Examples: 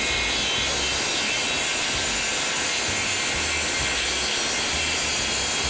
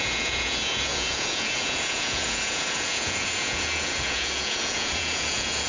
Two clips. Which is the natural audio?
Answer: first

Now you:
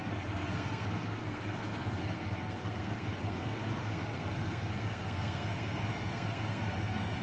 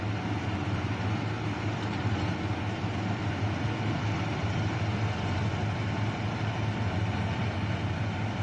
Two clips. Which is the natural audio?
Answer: second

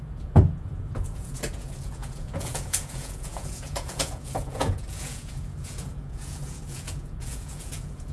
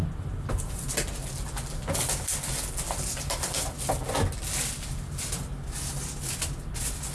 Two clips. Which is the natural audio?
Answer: second